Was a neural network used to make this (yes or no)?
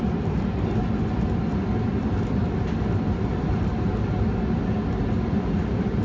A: no